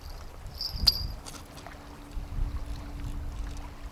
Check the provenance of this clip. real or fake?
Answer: real